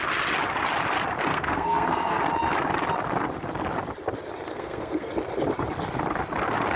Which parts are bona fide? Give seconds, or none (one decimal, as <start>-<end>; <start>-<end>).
0.0-1.3; 2.2-4.5; 5.1-6.8